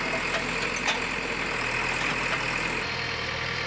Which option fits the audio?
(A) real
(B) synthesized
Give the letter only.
A